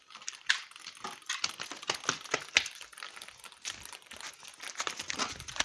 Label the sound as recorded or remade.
recorded